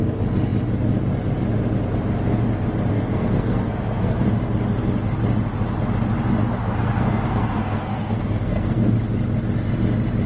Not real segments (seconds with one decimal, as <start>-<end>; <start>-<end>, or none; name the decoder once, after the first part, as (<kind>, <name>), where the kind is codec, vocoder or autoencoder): 2.9-4.3 (codec, SNAC); 6.6-8.9